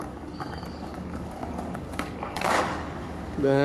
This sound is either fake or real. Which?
fake